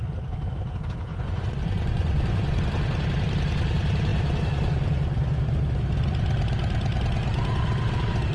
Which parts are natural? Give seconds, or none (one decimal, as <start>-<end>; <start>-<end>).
0.0-1.1; 2.7-8.3